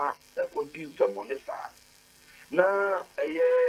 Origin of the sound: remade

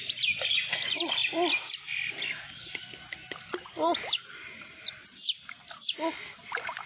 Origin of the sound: recorded